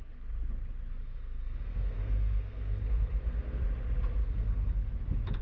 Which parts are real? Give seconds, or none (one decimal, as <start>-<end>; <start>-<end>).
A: 0.0-1.0; 3.6-4.2; 4.9-5.4